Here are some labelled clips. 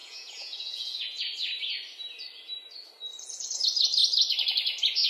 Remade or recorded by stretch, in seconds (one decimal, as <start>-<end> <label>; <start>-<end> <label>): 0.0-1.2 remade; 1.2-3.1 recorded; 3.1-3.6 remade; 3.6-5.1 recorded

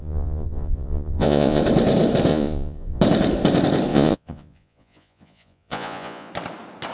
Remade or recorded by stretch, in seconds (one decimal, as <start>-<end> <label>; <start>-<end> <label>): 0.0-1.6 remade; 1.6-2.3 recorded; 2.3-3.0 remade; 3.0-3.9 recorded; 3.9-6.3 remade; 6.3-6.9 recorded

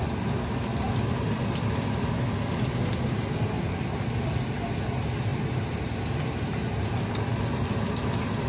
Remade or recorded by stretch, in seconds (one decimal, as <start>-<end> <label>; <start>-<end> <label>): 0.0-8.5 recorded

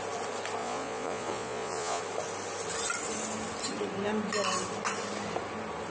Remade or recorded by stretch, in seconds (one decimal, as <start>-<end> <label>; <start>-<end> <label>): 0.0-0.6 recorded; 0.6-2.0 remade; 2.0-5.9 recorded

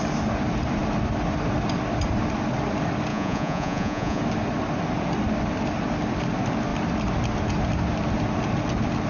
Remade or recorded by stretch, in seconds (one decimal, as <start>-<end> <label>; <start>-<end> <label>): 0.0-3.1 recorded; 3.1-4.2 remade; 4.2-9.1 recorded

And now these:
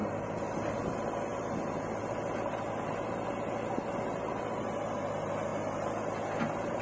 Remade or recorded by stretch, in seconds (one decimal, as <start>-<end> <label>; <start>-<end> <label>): 0.0-6.8 recorded

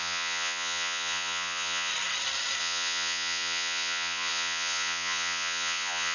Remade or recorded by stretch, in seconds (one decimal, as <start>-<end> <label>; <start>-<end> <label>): 0.0-1.9 remade; 1.9-2.6 recorded; 2.6-6.1 remade

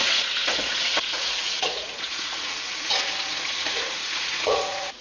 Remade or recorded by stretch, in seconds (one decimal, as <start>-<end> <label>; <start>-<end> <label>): 0.0-5.0 remade